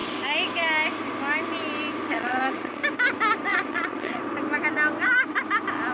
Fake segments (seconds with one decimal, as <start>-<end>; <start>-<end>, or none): 2.1-2.8; 3.5-4.2